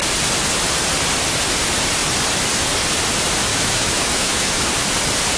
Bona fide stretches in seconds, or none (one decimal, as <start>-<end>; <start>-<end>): 0.0-3.5; 4.7-5.4